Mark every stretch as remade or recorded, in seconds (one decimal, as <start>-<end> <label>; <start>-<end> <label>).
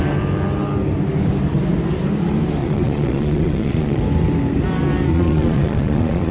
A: 0.0-2.6 recorded; 2.6-4.0 remade; 4.0-5.1 recorded; 5.1-6.3 remade